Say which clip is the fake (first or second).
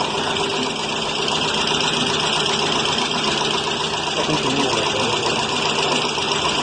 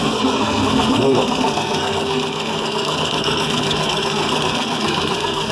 second